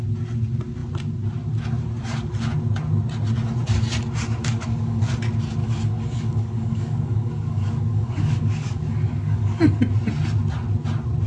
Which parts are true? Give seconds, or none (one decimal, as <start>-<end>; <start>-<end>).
0.0-4.4; 5.1-5.6; 9.8-11.3